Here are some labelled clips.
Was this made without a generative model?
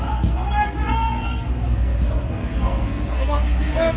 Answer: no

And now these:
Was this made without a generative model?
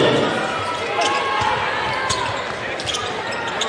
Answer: yes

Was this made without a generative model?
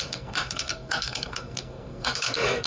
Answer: no